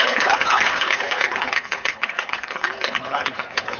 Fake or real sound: fake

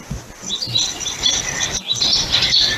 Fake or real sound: real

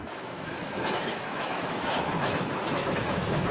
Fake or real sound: fake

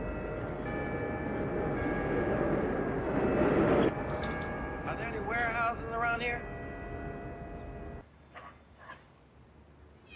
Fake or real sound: real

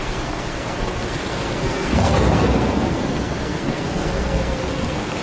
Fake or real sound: fake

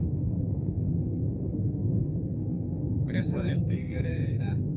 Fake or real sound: fake